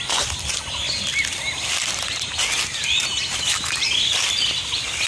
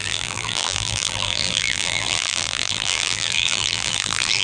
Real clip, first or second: first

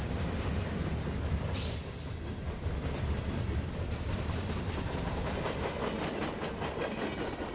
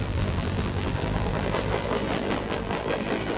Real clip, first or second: first